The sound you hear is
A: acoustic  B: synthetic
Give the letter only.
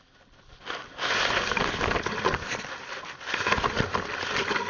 A